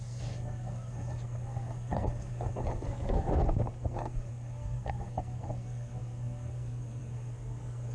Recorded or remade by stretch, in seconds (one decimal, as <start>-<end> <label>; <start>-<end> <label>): 0.0-7.9 remade